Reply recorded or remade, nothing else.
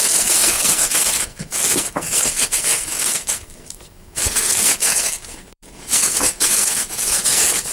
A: remade